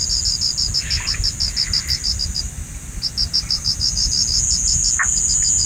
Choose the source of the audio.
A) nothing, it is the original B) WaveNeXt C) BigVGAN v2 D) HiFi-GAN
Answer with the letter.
A